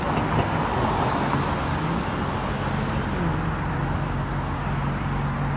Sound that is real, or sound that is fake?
real